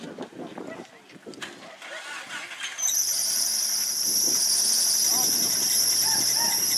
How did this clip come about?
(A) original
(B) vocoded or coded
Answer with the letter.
A